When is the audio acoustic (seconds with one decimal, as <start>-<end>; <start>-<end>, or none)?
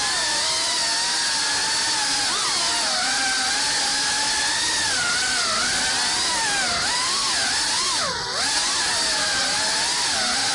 0.0-10.5